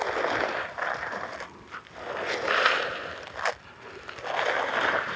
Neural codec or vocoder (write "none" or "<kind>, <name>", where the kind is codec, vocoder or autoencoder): vocoder, BigVGAN v2